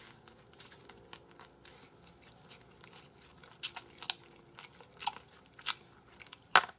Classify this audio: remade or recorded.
recorded